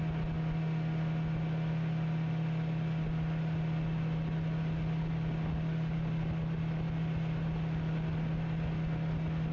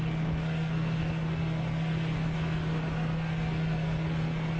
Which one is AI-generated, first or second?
second